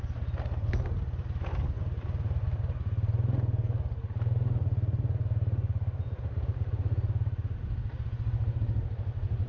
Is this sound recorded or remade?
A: recorded